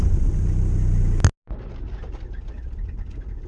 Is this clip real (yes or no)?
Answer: yes